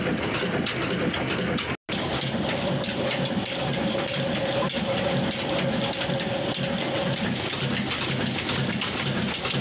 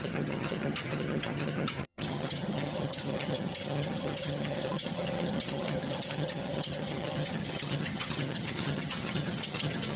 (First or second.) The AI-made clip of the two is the second